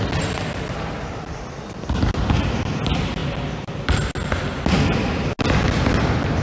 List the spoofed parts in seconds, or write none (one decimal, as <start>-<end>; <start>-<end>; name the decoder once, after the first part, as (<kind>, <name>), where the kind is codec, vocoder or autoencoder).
none